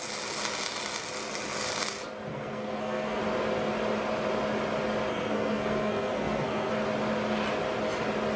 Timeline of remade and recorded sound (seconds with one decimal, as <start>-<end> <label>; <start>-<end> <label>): 0.0-2.3 recorded; 2.3-3.2 remade; 3.2-5.1 recorded; 5.1-6.7 remade; 6.7-8.4 recorded